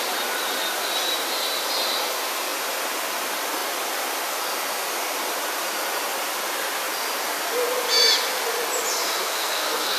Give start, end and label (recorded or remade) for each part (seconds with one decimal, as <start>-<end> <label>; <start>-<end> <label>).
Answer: 0.0-9.0 recorded; 9.0-10.0 remade